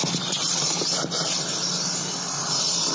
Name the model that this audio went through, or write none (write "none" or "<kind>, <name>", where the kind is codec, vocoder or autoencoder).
none